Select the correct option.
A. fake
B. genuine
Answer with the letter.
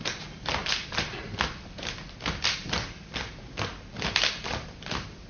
B